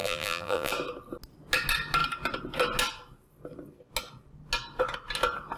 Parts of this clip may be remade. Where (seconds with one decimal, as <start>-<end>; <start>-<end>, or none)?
0.0-0.7